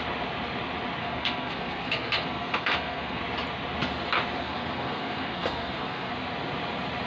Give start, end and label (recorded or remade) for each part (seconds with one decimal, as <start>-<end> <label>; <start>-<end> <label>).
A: 0.0-1.0 recorded; 1.0-3.2 remade; 3.2-4.4 recorded; 4.4-6.1 remade; 6.1-7.1 recorded